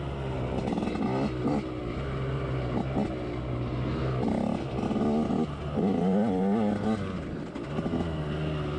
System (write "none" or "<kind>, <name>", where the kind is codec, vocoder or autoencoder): none